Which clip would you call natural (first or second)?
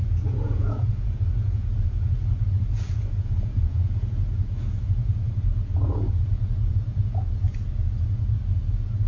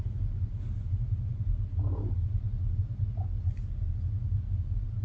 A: second